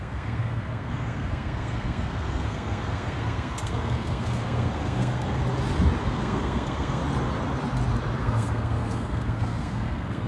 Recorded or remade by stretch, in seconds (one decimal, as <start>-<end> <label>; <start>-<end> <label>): 0.0-5.4 remade; 5.4-6.0 recorded; 6.0-7.0 remade; 7.0-8.2 recorded; 8.2-10.3 remade